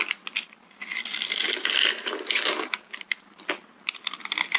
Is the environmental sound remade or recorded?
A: recorded